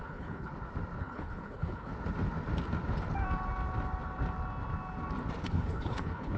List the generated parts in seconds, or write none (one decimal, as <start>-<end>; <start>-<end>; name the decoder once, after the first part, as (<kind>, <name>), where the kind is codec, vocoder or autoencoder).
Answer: 0.0-0.5 (codec, HILCodec); 1.0-1.9; 5.5-6.4